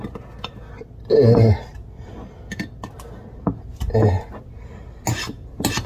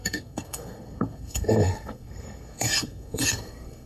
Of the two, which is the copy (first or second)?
second